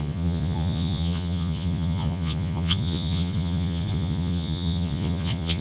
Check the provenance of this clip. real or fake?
fake